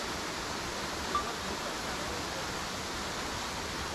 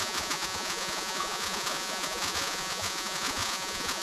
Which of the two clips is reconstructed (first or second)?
second